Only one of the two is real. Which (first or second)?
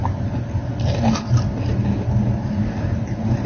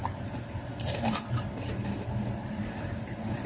first